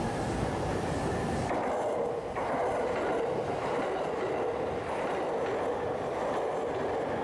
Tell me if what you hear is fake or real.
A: real